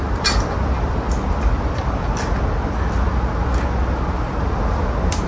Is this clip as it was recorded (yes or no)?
yes